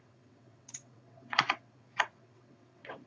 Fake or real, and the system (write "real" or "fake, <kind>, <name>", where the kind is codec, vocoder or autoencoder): fake, vocoder, WaveNeXt